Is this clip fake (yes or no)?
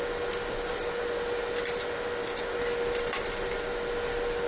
no